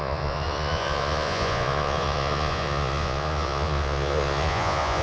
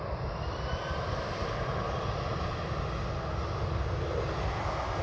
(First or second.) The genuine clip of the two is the second